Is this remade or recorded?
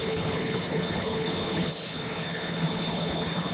remade